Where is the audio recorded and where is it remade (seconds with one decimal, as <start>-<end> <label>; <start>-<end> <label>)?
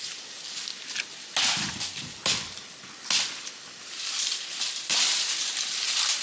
0.0-6.2 recorded